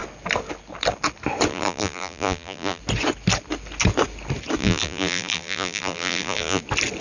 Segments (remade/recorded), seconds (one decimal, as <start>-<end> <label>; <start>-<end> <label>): 0.0-1.5 recorded; 1.5-2.8 remade; 2.8-4.6 recorded; 4.6-6.6 remade; 6.6-7.0 recorded